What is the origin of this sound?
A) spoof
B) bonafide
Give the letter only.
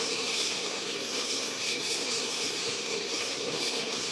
A